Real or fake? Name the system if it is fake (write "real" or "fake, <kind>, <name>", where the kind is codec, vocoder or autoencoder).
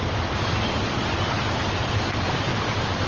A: real